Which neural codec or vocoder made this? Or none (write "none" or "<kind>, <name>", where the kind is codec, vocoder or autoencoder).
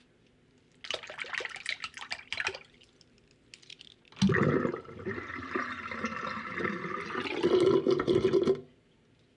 none